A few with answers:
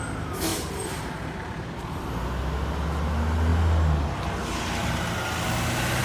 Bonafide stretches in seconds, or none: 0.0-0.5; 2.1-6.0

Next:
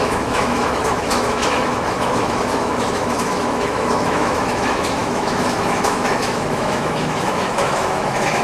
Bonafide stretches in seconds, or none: none

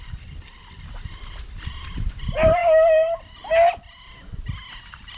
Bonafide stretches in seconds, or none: 0.0-5.2

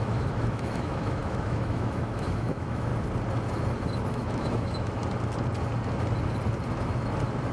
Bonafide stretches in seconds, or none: 2.9-4.1; 5.0-7.5